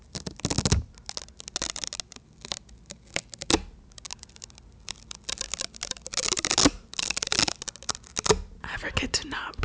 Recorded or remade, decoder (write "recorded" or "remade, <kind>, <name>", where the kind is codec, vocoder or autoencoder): recorded